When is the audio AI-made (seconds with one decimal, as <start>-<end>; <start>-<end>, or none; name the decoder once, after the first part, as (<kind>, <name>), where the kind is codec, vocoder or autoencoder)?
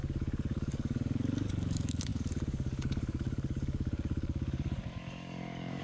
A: 0.0-5.8 (codec, DAC)